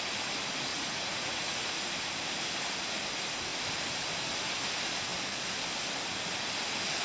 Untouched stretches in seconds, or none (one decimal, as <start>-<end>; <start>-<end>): 0.0-0.7; 1.9-7.0